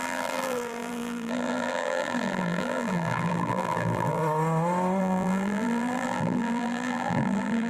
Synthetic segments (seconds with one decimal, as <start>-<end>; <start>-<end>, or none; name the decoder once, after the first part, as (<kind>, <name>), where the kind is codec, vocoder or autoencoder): 0.0-4.2 (vocoder, BigVGAN v2); 5.0-7.7